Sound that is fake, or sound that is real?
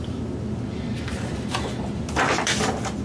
real